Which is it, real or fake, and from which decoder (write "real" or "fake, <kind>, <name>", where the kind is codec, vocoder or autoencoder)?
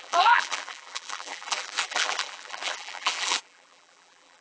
fake, vocoder, BigVGAN v2